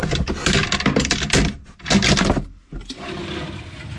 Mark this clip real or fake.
real